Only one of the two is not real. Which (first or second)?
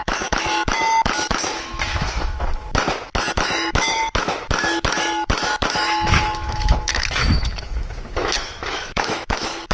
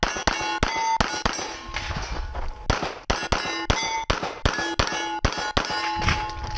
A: first